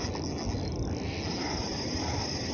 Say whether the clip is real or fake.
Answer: real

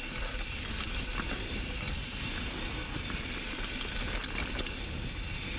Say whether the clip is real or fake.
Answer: real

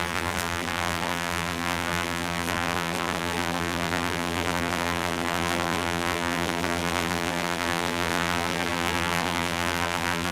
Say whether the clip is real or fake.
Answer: fake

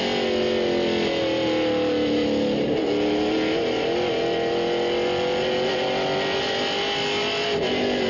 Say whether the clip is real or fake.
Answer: real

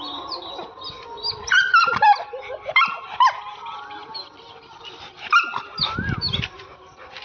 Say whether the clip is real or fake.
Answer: real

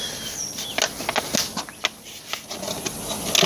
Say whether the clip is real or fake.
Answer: real